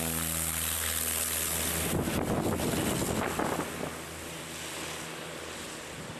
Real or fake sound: real